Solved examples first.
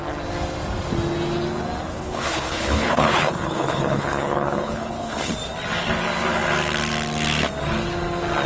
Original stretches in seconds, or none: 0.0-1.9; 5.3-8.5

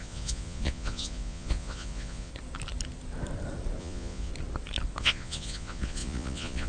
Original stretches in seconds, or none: 2.3-3.8; 4.3-5.0